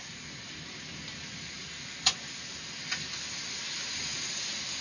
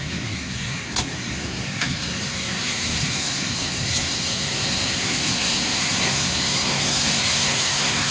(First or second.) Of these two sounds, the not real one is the second